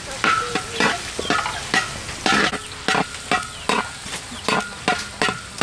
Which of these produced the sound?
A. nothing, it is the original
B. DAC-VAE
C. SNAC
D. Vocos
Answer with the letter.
A